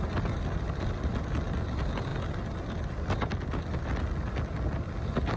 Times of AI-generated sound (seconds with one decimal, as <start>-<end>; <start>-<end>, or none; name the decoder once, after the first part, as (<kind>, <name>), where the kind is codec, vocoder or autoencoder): none

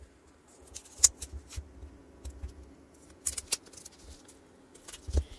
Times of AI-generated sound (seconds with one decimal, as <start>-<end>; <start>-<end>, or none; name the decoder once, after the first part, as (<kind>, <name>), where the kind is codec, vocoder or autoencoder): none